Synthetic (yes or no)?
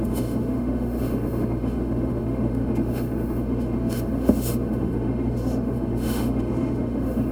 yes